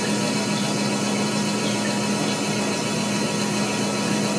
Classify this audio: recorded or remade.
remade